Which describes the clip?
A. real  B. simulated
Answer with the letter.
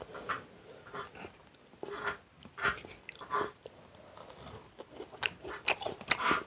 A